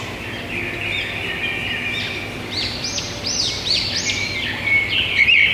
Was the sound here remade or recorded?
recorded